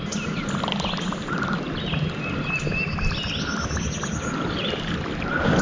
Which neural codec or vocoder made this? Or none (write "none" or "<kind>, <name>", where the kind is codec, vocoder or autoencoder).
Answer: none